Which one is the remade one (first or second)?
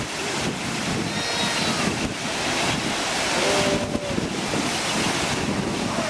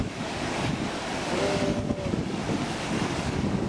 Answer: second